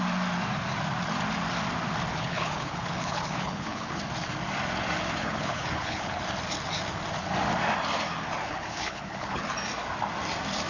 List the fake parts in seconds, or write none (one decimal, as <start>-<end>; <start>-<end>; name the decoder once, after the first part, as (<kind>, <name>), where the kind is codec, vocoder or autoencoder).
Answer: 2.1-4.0 (codec, HILCodec); 5.2-6.2; 8.4-9.4